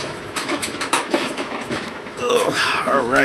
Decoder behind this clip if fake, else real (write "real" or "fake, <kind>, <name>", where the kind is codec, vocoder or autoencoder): fake, autoencoder, DAC-VAE